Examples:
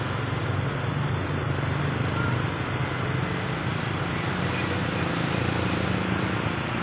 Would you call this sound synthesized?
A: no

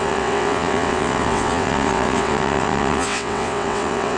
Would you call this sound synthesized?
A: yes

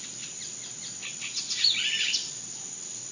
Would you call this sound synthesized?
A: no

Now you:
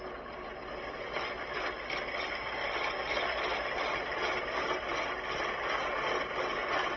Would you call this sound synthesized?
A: no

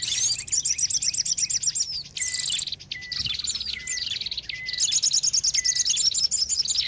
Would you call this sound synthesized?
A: no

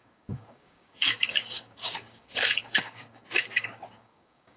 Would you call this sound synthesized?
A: yes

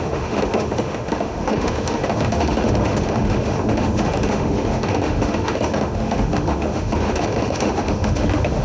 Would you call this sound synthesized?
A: yes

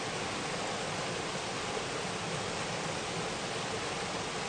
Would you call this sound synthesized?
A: no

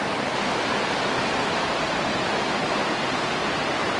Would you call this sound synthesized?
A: no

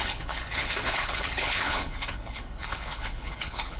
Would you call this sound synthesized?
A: yes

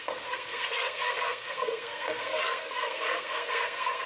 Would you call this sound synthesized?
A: yes